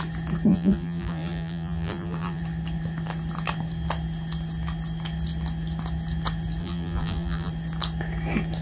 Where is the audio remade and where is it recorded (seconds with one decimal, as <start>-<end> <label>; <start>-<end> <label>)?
0.0-0.5 recorded; 0.5-2.4 remade; 2.4-6.6 recorded; 6.6-7.5 remade; 7.5-8.6 recorded